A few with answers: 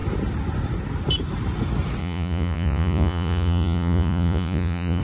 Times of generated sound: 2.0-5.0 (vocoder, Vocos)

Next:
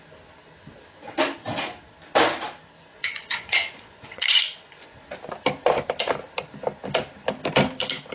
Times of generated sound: 2.8-5.0 (vocoder, Vocos)